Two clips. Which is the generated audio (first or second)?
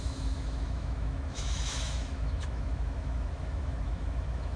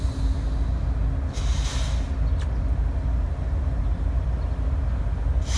first